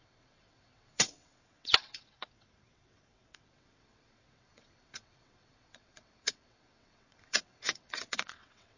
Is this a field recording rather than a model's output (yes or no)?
no